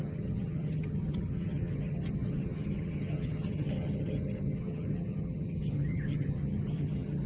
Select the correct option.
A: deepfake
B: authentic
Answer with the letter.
A